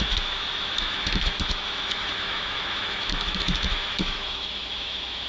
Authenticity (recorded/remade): remade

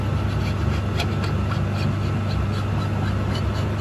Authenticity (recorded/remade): recorded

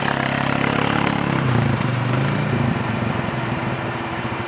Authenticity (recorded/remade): remade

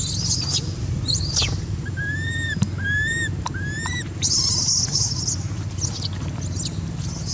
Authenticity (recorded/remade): recorded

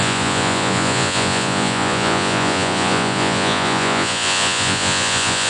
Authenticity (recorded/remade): remade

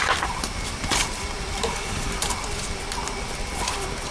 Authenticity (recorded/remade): remade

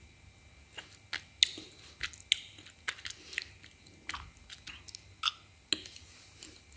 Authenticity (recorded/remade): recorded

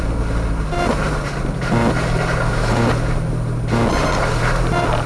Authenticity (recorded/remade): recorded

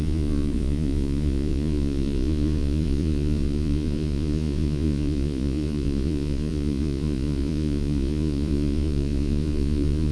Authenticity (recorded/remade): remade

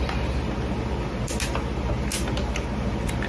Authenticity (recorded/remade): recorded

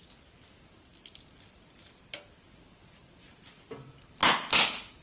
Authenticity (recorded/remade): recorded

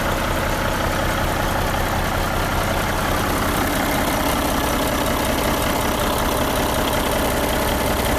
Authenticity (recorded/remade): recorded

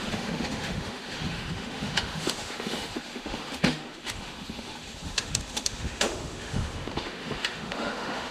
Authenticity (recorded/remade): remade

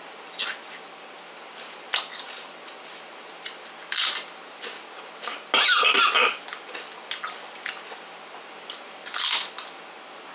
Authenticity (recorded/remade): recorded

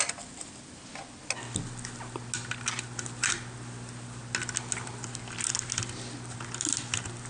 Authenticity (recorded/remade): recorded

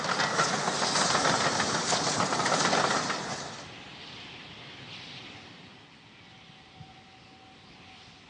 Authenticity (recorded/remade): recorded